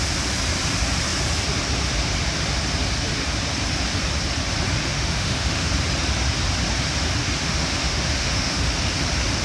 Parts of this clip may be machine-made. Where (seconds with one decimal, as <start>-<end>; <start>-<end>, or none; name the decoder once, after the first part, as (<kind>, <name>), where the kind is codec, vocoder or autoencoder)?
4.8-5.7 (autoencoder, DAC-VAE); 7.2-8.7

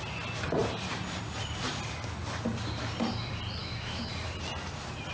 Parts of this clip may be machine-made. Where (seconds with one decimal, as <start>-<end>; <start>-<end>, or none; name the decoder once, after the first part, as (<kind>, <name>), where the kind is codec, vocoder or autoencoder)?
3.6-4.1 (autoencoder, DAC-VAE)

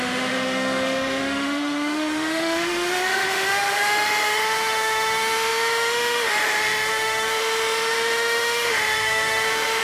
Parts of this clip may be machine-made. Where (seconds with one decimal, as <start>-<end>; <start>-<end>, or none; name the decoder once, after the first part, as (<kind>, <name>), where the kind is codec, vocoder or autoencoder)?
0.0-9.8 (autoencoder, DAC-VAE)

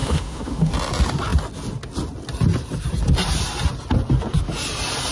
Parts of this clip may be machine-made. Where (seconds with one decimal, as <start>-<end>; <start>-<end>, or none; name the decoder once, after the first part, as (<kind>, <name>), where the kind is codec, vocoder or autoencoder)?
0.0-0.7 (autoencoder, DAC-VAE)

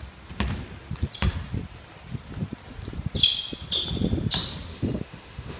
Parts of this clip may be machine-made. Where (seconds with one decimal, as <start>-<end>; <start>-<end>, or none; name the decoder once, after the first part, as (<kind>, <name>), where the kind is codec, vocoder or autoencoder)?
4.7-5.6 (autoencoder, DAC-VAE)

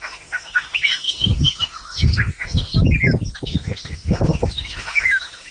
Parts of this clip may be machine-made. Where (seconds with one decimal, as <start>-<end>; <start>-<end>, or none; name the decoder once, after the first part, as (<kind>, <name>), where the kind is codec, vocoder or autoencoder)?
0.0-2.7 (autoencoder, DAC-VAE); 3.4-5.5

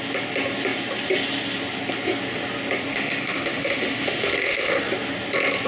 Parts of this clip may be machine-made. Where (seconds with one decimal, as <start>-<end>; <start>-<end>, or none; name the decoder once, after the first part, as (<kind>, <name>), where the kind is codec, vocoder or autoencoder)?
2.9-4.8 (autoencoder, DAC-VAE)

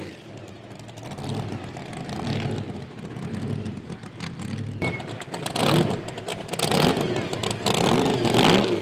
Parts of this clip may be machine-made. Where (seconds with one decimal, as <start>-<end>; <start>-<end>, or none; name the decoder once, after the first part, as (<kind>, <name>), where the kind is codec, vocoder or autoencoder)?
none